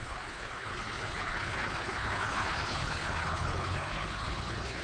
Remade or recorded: remade